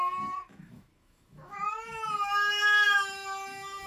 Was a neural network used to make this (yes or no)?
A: yes